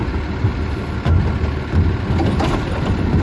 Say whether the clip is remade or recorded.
recorded